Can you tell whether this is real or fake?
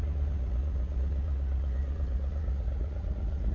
fake